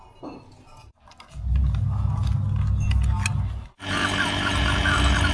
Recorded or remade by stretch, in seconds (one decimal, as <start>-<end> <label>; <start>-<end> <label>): 0.0-5.3 recorded

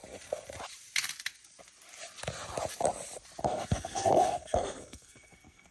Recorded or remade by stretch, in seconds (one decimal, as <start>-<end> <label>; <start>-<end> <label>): 0.0-3.4 recorded; 3.4-5.7 remade